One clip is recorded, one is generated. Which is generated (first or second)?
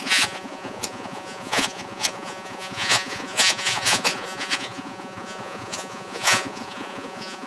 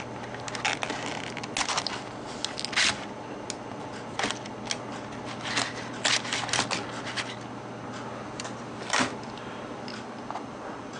first